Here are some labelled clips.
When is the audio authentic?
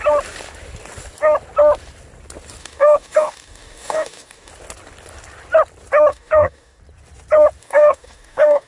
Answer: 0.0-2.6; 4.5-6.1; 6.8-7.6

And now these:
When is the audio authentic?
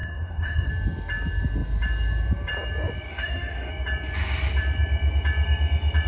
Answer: 0.7-3.1; 3.7-6.1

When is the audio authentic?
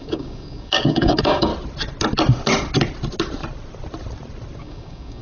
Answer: 1.5-4.6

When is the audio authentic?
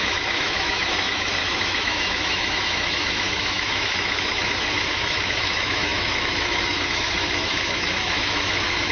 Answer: none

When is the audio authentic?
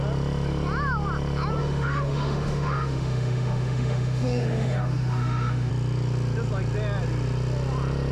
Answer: 0.0-1.6; 5.7-8.1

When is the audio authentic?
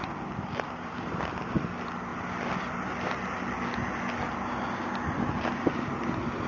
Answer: 0.0-6.5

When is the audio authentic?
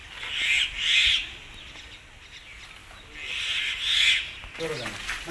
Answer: 0.0-5.3